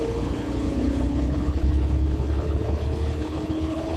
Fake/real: fake